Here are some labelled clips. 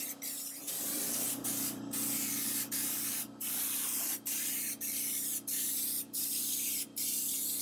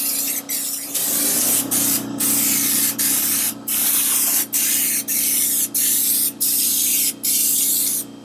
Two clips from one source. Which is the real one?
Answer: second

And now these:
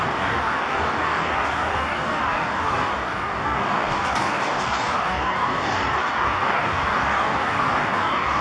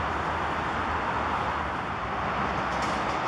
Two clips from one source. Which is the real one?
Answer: second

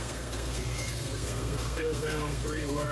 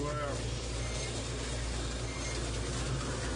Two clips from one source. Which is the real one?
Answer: second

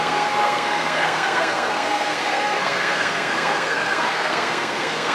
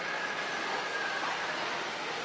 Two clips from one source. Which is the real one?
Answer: second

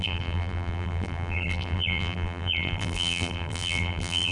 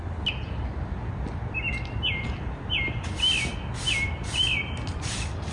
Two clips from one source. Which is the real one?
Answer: second